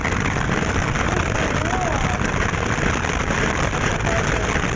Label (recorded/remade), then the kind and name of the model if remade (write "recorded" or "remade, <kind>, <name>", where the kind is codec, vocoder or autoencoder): recorded